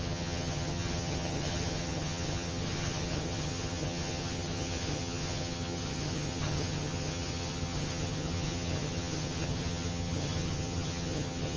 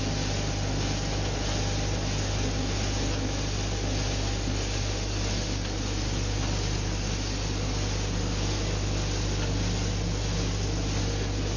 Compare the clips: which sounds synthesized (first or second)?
first